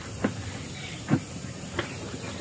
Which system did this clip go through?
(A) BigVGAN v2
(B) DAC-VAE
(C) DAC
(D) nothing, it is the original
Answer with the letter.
D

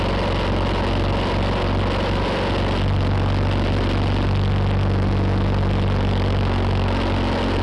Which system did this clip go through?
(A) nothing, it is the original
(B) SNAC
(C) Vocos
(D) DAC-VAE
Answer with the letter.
A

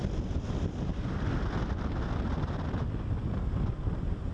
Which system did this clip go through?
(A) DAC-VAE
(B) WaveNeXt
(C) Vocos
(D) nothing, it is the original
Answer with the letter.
D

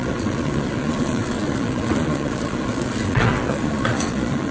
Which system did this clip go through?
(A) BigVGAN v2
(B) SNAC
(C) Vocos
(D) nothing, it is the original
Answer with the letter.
C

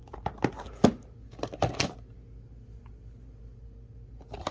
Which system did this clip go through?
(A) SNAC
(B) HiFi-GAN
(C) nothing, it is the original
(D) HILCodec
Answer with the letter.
C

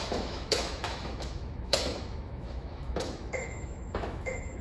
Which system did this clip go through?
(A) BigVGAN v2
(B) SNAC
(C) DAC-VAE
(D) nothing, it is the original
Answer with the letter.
C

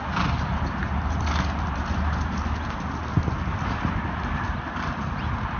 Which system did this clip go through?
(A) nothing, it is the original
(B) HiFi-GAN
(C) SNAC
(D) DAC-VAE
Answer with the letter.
A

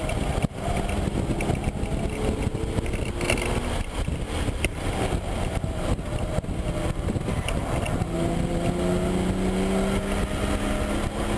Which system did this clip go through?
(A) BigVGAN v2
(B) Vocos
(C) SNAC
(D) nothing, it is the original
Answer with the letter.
D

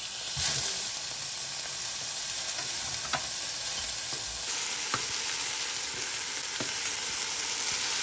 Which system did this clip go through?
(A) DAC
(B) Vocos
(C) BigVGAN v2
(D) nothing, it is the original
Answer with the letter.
D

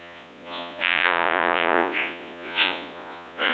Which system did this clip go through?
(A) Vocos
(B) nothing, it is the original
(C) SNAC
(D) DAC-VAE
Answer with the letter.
A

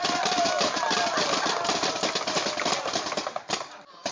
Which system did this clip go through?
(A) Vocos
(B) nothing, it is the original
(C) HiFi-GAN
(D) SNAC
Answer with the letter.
B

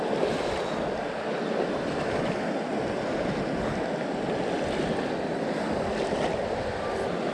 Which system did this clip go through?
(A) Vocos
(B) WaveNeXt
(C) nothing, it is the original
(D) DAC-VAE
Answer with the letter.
C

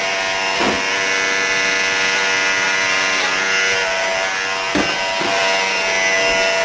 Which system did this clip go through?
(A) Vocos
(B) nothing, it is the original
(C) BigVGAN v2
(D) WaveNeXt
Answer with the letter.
B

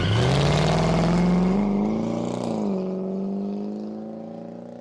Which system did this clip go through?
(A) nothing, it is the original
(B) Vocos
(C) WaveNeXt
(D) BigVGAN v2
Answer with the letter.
A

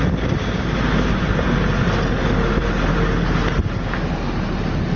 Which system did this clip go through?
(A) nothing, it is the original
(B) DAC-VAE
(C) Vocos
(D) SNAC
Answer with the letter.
A